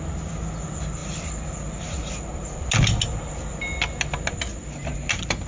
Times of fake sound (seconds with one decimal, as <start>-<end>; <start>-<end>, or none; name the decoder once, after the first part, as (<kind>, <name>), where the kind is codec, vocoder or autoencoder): none